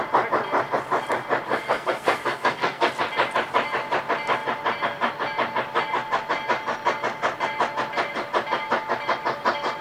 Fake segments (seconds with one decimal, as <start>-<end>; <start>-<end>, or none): 1.5-2.9